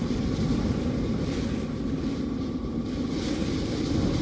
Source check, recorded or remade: recorded